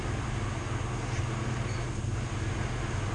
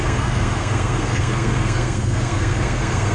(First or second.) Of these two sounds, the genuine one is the first